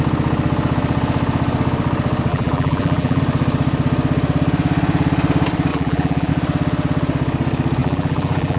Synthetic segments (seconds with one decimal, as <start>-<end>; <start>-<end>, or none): 2.3-3.2; 5.7-6.3; 7.8-8.6